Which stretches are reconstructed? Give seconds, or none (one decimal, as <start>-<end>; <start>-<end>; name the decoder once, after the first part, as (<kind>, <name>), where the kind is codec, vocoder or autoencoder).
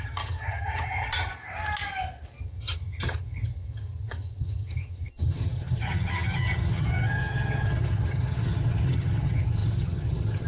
0.0-1.3 (vocoder, HiFi-GAN); 2.4-10.5